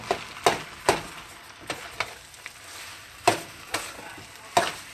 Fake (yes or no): no